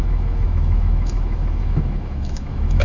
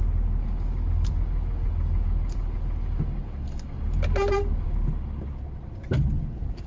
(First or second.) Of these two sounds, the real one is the second